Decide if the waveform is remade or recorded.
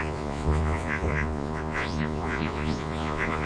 remade